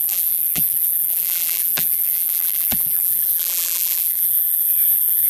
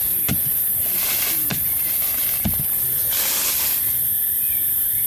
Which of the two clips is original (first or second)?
second